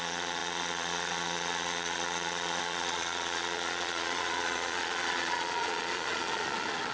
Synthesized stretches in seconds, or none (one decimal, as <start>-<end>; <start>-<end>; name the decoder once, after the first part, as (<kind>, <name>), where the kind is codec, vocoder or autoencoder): 0.0-6.9 (vocoder, Vocos)